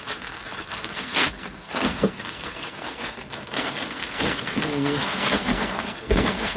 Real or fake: fake